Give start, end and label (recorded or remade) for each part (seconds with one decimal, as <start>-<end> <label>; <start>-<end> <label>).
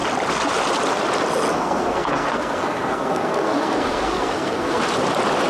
0.0-1.5 recorded; 1.5-4.8 remade; 4.8-5.5 recorded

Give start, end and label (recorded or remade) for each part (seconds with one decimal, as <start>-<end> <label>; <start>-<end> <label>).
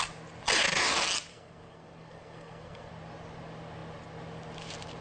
0.0-1.3 recorded; 1.3-2.9 remade; 2.9-5.0 recorded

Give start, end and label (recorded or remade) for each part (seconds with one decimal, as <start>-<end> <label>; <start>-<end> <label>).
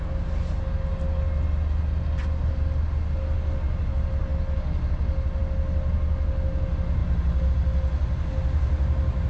0.0-9.3 recorded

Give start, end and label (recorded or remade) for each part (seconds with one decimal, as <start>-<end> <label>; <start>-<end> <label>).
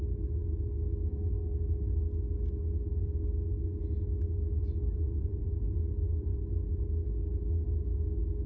0.0-4.6 recorded; 4.6-5.5 remade; 5.5-6.1 recorded; 6.1-6.7 remade; 6.7-8.5 recorded